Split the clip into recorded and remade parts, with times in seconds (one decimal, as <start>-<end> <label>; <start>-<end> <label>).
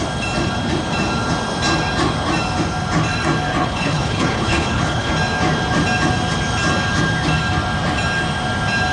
0.0-3.6 recorded; 3.6-5.1 remade; 5.1-8.9 recorded